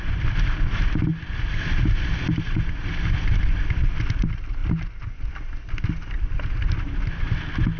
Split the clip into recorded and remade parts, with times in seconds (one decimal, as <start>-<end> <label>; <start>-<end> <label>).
0.0-7.8 recorded